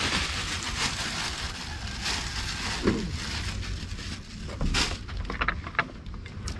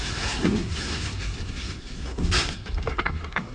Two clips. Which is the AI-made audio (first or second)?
second